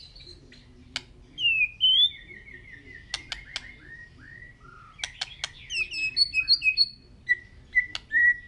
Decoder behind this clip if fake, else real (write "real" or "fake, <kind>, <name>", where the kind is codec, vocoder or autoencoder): real